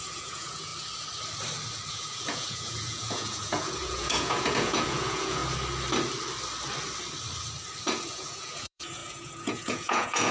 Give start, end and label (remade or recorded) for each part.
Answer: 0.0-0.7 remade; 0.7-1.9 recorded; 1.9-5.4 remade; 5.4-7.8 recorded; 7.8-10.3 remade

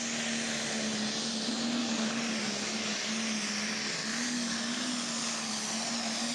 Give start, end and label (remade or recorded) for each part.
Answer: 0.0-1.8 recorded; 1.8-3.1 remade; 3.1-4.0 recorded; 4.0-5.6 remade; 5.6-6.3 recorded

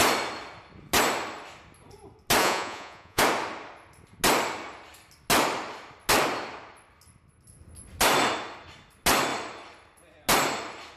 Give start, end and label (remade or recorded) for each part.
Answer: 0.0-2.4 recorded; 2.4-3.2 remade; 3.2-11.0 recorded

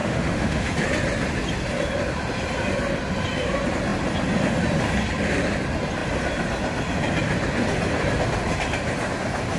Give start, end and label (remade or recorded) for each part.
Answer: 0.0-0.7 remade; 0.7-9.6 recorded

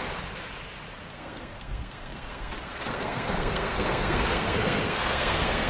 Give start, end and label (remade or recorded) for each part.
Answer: 0.0-1.0 recorded; 1.0-5.7 remade

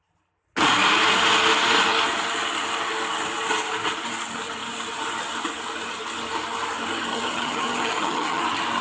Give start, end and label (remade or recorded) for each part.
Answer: 0.0-7.1 recorded; 7.1-8.4 remade; 8.4-8.8 recorded